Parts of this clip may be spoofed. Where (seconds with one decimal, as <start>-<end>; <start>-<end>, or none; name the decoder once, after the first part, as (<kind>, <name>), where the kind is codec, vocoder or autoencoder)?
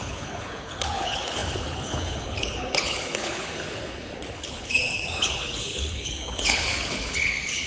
0.0-7.7 (codec, HILCodec)